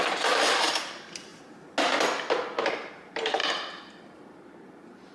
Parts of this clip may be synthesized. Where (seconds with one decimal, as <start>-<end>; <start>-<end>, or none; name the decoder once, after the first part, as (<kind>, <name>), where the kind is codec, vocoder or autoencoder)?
0.0-1.3 (vocoder, BigVGAN v2); 2.9-5.1